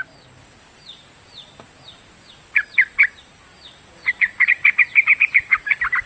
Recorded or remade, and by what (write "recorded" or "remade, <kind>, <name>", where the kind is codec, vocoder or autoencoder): recorded